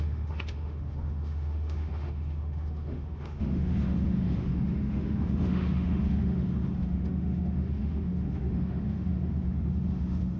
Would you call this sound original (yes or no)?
no